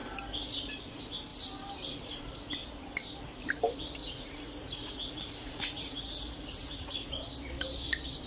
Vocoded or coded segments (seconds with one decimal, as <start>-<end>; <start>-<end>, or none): 4.0-7.1